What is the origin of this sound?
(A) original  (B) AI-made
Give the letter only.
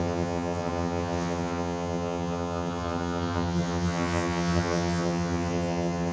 B